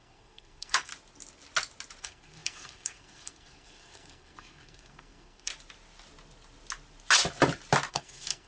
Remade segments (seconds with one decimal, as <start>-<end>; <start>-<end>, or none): 0.0-0.9; 2.0-5.5; 7.9-8.5